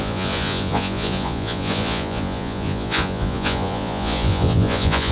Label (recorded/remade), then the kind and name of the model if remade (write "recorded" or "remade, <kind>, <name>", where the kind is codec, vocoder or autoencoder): remade, vocoder, Vocos